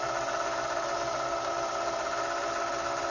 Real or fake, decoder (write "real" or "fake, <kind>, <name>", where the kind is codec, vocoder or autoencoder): real